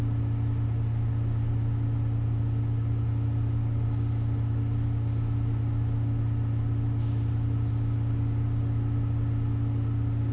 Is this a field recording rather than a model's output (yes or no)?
yes